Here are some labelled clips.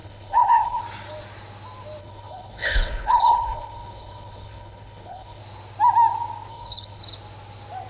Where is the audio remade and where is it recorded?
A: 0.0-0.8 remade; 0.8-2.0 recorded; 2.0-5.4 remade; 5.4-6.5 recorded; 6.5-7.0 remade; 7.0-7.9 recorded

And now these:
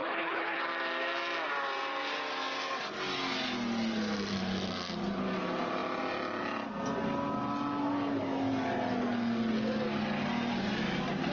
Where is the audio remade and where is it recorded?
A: 0.0-0.6 remade; 0.6-11.3 recorded

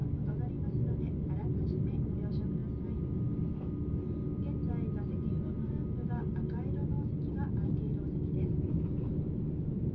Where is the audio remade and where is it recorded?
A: 0.0-9.9 recorded

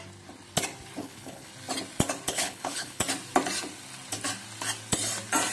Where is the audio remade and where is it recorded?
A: 0.0-1.0 recorded; 1.0-1.5 remade; 1.5-2.3 recorded; 2.3-3.0 remade; 3.0-5.5 recorded

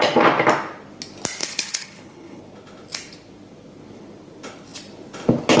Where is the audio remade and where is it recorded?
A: 0.0-1.4 recorded; 1.4-2.4 remade; 2.4-5.6 recorded

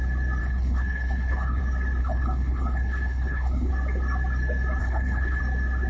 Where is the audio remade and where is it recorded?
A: 0.0-0.4 recorded; 0.4-1.6 remade; 1.6-2.0 recorded; 2.0-3.7 remade; 3.7-4.8 recorded; 4.8-5.4 remade; 5.4-5.9 recorded